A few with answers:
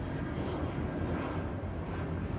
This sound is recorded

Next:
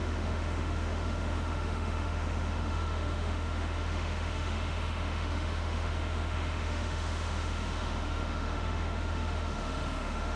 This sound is remade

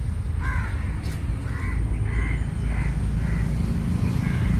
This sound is recorded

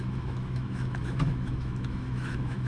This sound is remade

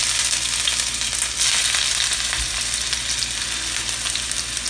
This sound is recorded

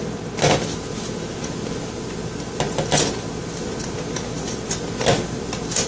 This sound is recorded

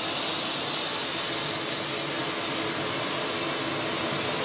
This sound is recorded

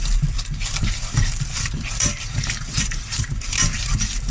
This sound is remade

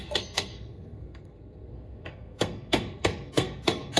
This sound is remade